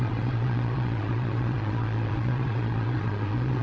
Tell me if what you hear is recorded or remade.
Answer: remade